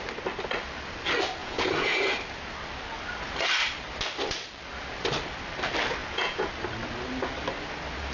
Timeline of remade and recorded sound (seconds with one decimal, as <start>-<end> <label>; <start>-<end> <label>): 0.0-1.4 recorded; 1.4-2.0 remade; 2.0-6.0 recorded; 6.0-6.5 remade; 6.5-8.1 recorded